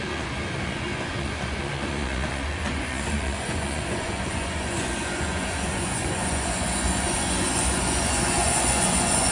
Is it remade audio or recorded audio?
remade